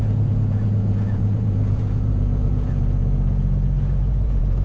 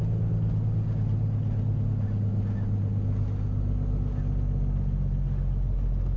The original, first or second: second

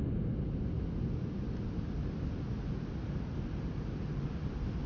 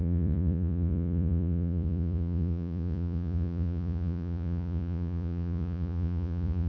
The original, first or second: first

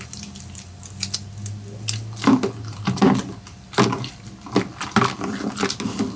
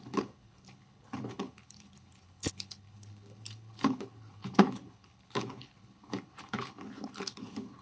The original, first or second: first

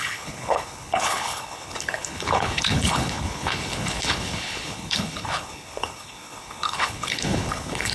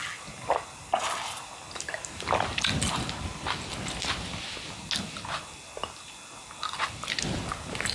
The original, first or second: second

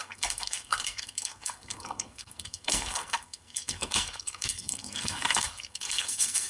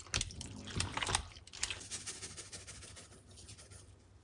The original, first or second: second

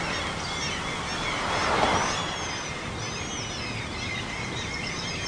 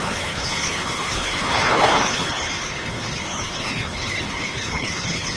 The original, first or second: first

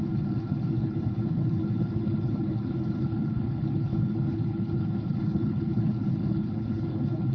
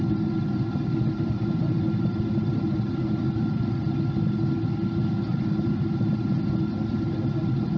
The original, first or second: second